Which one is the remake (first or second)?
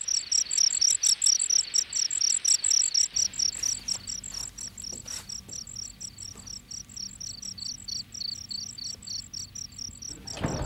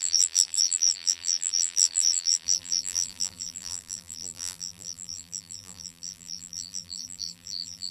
second